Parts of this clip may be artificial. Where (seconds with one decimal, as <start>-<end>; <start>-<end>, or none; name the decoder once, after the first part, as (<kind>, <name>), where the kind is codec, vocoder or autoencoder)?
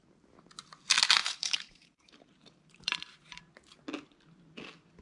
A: 1.2-3.4 (vocoder, BigVGAN v2)